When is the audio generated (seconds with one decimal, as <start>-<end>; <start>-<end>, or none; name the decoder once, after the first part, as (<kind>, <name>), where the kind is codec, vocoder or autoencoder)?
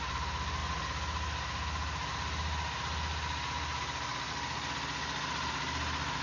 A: none